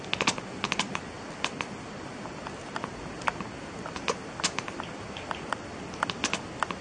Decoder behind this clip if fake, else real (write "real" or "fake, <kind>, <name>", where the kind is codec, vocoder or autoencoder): real